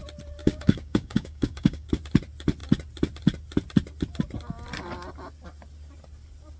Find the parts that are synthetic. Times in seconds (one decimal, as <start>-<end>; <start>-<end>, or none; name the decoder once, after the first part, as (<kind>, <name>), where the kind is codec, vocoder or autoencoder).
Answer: 0.4-1.9 (codec, DAC)